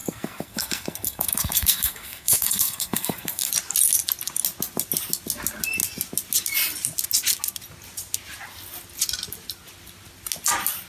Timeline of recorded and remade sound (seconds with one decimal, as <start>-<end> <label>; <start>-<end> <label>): 0.0-3.5 remade; 3.5-10.9 recorded